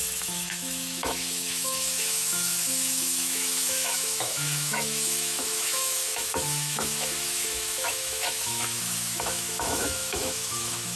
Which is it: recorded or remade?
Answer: remade